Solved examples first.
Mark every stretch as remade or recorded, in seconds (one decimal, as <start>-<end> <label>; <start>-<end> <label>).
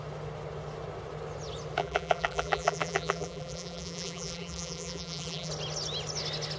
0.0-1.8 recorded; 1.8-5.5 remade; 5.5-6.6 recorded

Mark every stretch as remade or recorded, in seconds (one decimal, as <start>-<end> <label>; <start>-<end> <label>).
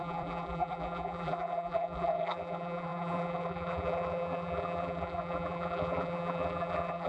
0.0-7.1 remade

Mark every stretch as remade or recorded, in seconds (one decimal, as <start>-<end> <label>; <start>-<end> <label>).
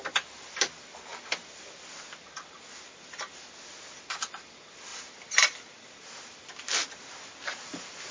0.0-4.9 recorded; 4.9-6.0 remade; 6.0-8.1 recorded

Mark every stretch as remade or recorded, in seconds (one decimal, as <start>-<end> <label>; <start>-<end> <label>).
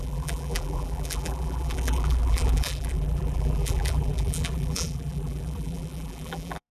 0.0-6.7 remade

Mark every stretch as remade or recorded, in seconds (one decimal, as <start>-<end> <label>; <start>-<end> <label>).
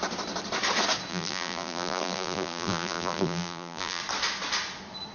0.0-1.1 recorded; 1.1-4.0 remade; 4.0-5.1 recorded